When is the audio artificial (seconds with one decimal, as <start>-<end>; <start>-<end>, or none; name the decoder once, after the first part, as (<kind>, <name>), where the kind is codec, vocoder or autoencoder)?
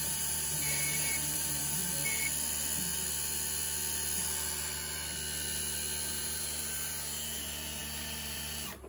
0.0-1.8 (vocoder, BigVGAN v2); 6.1-8.9